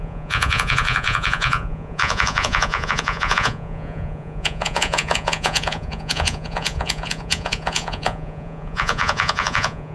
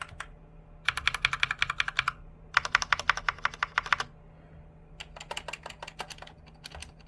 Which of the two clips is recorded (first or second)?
second